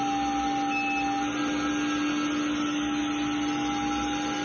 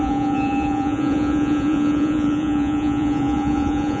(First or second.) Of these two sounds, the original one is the first